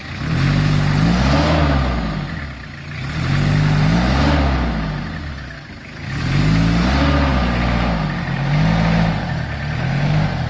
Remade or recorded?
recorded